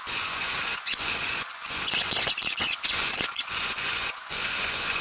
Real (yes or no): no